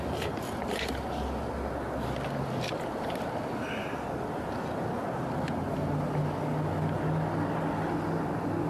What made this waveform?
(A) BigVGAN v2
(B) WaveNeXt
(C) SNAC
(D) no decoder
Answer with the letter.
D